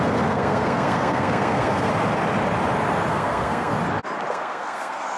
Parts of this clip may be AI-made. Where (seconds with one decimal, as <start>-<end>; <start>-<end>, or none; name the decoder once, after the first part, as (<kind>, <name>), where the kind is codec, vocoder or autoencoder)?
0.0-1.9 (codec, SNAC); 3.1-3.7; 4.3-5.2